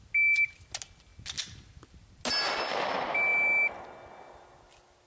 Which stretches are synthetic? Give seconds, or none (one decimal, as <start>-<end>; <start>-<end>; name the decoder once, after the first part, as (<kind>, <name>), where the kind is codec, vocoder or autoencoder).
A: none